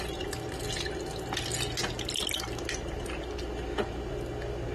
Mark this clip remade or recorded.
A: recorded